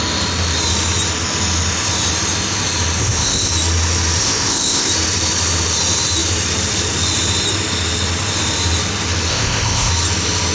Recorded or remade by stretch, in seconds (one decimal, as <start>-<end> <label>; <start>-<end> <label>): 0.0-3.0 recorded; 3.0-3.5 remade; 3.5-4.2 recorded; 4.2-4.9 remade; 4.9-9.3 recorded; 9.3-9.9 remade; 9.9-10.5 recorded

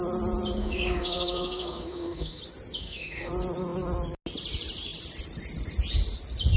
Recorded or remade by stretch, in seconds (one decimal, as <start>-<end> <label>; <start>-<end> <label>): 0.0-0.6 recorded; 0.6-2.4 remade; 2.4-2.8 recorded; 2.8-3.3 remade; 3.3-6.6 recorded